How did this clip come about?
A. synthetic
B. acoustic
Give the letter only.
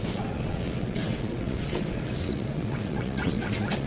A